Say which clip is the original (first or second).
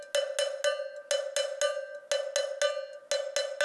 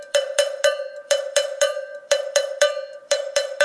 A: first